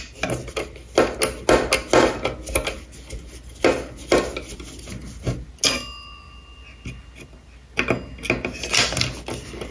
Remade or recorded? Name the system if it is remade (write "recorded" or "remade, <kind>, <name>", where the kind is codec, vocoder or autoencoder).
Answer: recorded